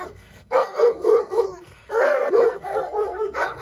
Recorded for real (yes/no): no